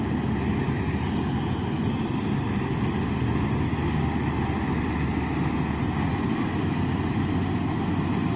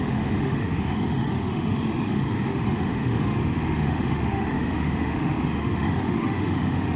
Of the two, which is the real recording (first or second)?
first